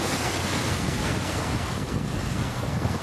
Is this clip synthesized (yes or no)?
yes